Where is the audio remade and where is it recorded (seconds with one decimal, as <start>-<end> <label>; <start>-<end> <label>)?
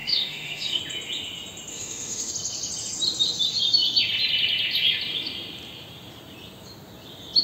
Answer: 0.0-0.8 remade; 0.8-1.7 recorded; 1.7-2.3 remade; 2.3-7.4 recorded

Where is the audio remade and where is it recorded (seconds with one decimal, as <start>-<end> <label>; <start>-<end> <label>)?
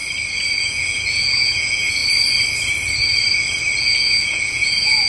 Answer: 0.0-0.6 recorded; 0.6-2.0 remade; 2.0-3.8 recorded; 3.8-5.1 remade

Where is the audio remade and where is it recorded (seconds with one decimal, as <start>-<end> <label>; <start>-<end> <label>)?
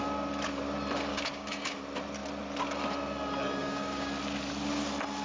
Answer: 0.0-1.1 recorded; 1.1-1.8 remade; 1.8-3.6 recorded; 3.6-4.1 remade; 4.1-5.2 recorded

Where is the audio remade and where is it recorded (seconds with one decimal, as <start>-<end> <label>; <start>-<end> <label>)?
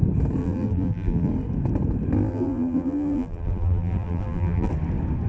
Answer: 0.0-0.4 recorded; 0.4-1.3 remade; 1.3-2.3 recorded; 2.3-4.7 remade; 4.7-5.3 recorded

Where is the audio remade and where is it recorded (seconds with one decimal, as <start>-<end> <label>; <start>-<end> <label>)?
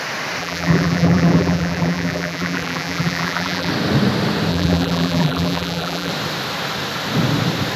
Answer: 0.0-0.4 recorded; 0.4-3.7 remade; 3.7-4.5 recorded; 4.5-6.1 remade; 6.1-7.8 recorded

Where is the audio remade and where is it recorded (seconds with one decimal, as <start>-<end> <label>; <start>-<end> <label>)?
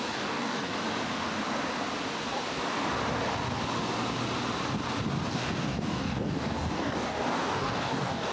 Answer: 0.0-0.8 remade; 0.8-5.3 recorded; 5.3-8.3 remade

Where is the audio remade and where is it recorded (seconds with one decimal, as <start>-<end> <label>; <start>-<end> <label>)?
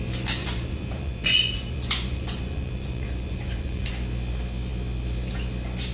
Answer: 0.0-0.4 recorded; 0.4-3.9 remade; 3.9-5.9 recorded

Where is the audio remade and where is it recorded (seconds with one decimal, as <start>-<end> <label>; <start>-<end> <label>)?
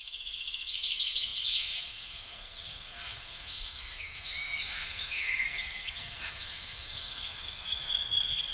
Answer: 0.0-8.5 remade